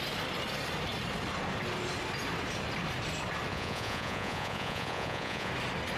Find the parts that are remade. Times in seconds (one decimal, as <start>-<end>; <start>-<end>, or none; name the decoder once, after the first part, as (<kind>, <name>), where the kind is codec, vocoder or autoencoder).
3.5-5.5 (vocoder, Vocos)